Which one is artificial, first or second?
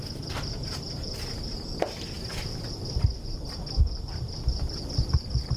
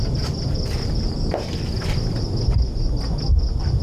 first